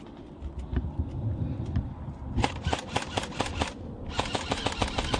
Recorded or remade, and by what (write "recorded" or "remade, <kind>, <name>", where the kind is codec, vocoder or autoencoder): recorded